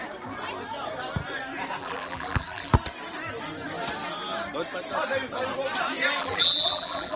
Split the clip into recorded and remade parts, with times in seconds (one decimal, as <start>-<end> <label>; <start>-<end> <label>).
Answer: 0.0-1.8 recorded; 1.8-2.7 remade; 2.7-6.2 recorded; 6.2-7.2 remade

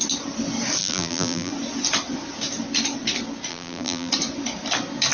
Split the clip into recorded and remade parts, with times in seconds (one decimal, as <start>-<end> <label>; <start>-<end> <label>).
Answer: 0.0-0.8 recorded; 0.8-1.5 remade; 1.5-3.5 recorded; 3.5-4.1 remade; 4.1-5.1 recorded

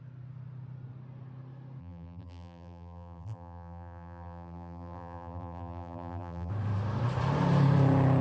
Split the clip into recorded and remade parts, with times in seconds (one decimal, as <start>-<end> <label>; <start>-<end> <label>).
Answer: 0.0-1.8 recorded; 1.8-6.5 remade; 6.5-8.2 recorded

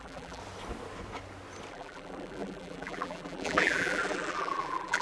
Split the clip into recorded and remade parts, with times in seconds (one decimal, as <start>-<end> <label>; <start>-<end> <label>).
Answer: 0.0-0.4 remade; 0.4-1.7 recorded; 1.7-5.0 remade